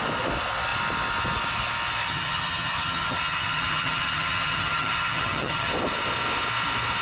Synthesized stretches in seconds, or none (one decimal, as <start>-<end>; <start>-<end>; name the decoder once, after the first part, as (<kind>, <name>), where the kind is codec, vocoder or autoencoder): 2.0-5.7 (vocoder, HiFi-GAN)